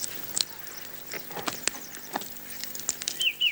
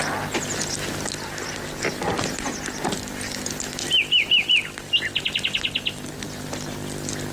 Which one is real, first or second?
second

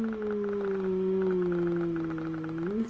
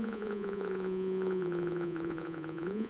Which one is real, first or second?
first